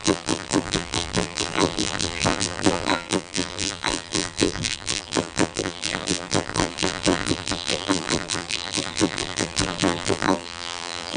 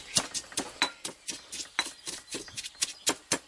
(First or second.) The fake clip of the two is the first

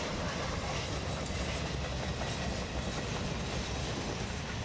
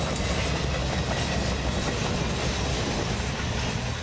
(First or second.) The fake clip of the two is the first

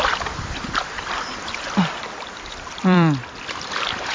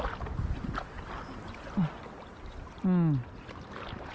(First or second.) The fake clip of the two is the first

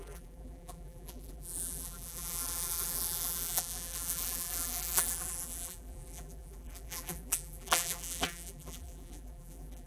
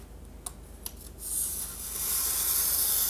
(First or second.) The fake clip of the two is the first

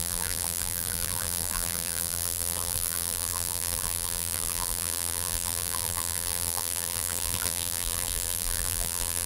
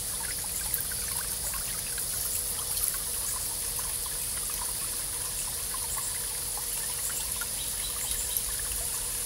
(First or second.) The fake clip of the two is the first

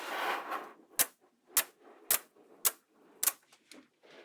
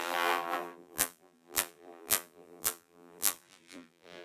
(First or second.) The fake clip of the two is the second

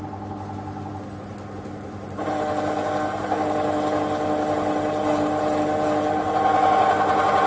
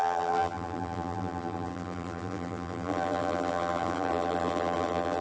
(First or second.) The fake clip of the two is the second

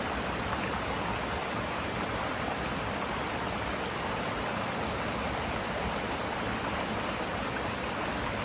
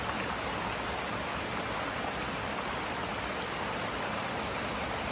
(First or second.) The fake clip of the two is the first